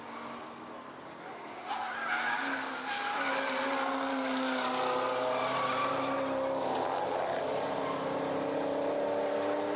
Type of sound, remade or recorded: recorded